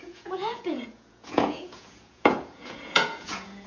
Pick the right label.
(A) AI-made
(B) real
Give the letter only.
A